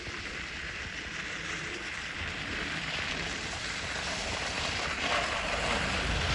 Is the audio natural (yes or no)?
no